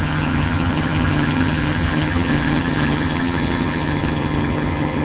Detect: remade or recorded remade